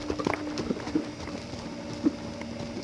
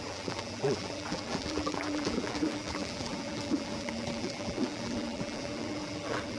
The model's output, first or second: second